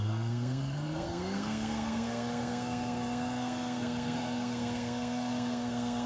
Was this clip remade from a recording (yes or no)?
yes